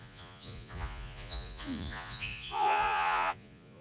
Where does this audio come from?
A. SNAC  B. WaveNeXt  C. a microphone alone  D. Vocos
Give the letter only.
D